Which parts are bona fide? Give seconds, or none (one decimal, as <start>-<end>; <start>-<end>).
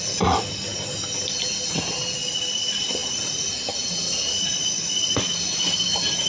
0.0-6.3